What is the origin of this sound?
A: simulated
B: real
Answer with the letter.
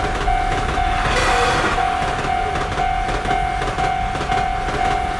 B